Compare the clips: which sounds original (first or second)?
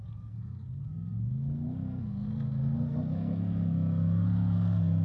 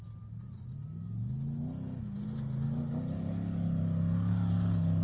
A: second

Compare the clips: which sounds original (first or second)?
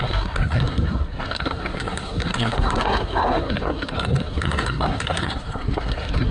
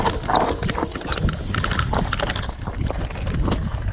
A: second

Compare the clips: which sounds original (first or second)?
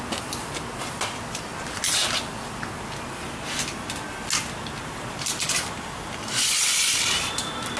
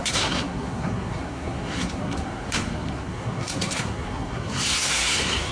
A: first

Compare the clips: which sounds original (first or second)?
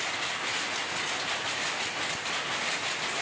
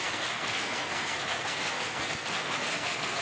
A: first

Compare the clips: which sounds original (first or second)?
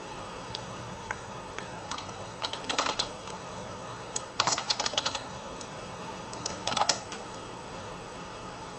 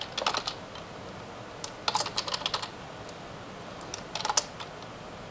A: second